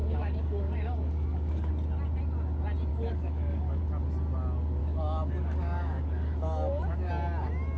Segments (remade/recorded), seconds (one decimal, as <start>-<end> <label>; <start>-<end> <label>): 0.0-1.7 remade; 1.7-2.9 recorded; 2.9-3.8 remade; 3.8-4.8 recorded; 4.8-7.1 remade; 7.1-7.8 recorded